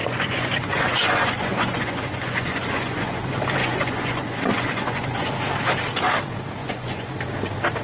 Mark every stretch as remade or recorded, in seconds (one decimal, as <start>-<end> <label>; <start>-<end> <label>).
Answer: 0.0-3.2 remade; 3.2-3.6 recorded; 3.6-5.3 remade; 5.3-6.6 recorded; 6.6-7.1 remade; 7.1-7.8 recorded